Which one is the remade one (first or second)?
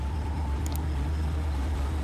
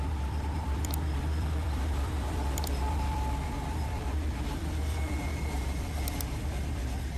second